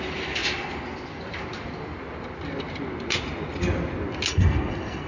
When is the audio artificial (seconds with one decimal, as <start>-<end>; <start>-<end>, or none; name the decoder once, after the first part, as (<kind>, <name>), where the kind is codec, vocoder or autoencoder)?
4.3-5.1 (codec, SNAC)